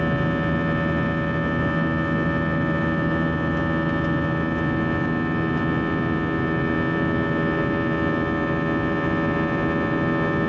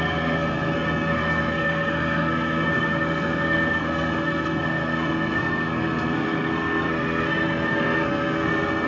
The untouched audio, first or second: first